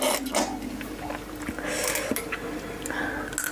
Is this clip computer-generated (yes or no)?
no